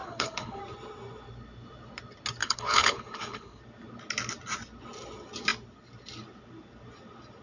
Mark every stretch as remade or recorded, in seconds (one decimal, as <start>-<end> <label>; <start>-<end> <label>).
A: 0.0-0.6 remade; 0.6-2.4 recorded; 2.4-3.6 remade; 3.6-7.4 recorded